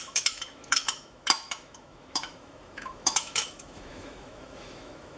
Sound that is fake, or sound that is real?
fake